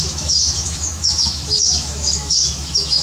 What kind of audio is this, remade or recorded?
remade